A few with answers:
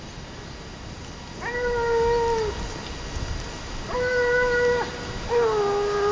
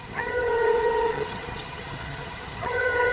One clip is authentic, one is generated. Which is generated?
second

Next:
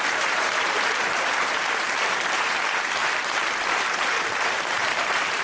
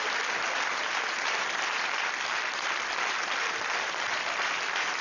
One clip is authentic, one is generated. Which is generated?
first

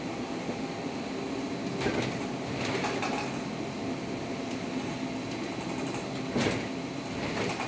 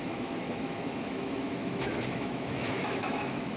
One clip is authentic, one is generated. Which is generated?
second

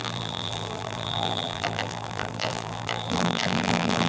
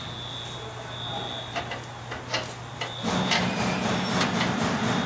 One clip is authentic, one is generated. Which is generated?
first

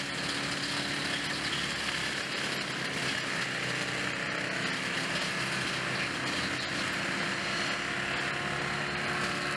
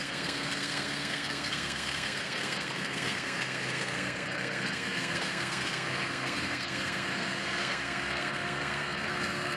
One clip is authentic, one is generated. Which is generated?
second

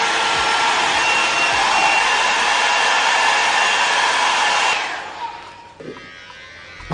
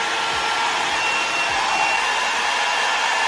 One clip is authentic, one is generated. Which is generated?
first